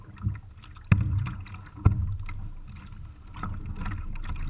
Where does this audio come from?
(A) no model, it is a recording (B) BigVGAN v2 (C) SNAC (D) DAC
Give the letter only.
A